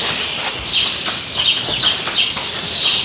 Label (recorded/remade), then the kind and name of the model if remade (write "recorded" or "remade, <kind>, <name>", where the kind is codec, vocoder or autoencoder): recorded